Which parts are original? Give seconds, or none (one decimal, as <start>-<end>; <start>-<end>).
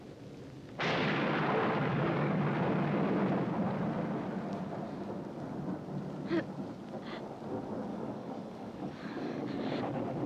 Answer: 0.0-1.9; 2.4-7.9; 9.8-10.3